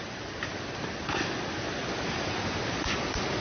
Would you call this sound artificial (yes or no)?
no